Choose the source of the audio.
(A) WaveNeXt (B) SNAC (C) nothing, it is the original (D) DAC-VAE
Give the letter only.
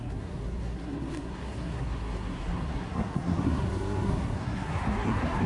B